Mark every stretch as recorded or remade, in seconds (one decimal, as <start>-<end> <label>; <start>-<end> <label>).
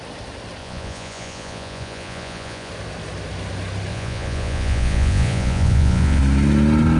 0.0-0.6 recorded; 0.6-2.7 remade; 2.7-3.9 recorded; 3.9-6.2 remade; 6.2-7.0 recorded